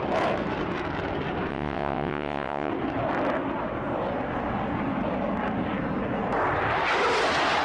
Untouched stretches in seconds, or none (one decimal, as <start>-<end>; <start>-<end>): 0.0-1.5; 2.7-7.6